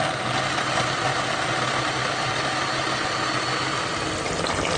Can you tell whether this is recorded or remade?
recorded